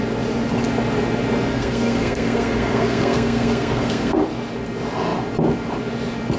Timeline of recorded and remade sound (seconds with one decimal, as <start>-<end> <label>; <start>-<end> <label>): 0.0-1.5 recorded; 1.5-4.2 remade; 4.2-6.4 recorded